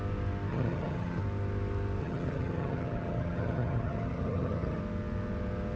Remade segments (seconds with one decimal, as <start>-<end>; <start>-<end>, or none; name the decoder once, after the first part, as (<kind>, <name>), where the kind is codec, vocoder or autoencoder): 0.5-1.2 (vocoder, HiFi-GAN); 2.0-4.8